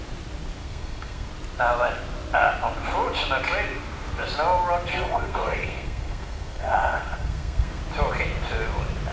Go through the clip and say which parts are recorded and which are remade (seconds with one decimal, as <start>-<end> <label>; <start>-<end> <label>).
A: 0.0-0.6 recorded; 0.6-1.3 remade; 1.3-4.9 recorded; 4.9-7.8 remade; 7.8-9.1 recorded